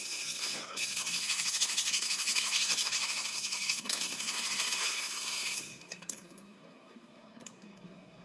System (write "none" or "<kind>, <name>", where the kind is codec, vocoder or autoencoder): codec, SNAC